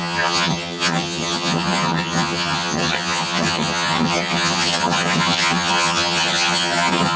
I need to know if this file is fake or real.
fake